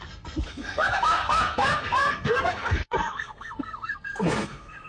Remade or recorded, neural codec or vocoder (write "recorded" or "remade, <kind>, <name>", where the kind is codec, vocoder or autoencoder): remade, codec, SNAC